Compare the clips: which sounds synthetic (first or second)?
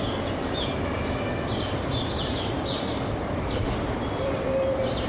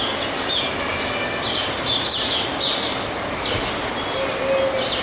first